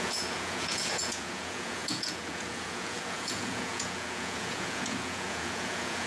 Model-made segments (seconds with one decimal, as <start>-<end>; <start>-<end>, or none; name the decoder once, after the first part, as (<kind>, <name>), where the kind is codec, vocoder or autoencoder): 0.0-6.1 (vocoder, Vocos)